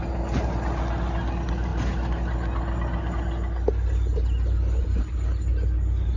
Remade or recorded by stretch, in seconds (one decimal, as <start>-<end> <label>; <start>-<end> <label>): 0.0-6.2 recorded